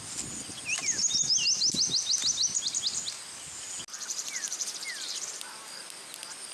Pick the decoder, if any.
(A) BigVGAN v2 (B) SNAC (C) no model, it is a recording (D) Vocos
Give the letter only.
C